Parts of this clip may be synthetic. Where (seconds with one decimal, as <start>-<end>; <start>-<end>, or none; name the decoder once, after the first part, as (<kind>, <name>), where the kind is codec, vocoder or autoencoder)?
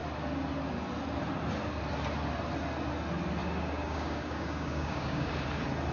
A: 3.4-5.3 (codec, DAC)